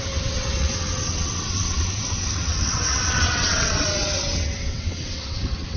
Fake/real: fake